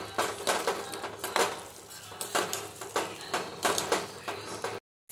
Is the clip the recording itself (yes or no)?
yes